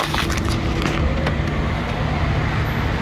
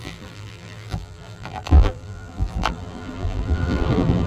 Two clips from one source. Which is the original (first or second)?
first